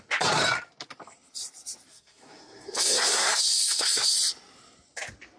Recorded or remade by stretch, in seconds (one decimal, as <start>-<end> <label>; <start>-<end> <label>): 0.0-1.9 recorded; 1.9-4.1 remade; 4.1-5.4 recorded